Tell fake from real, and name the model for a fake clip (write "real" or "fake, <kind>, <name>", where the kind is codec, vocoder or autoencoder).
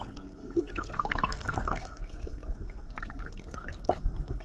fake, codec, SNAC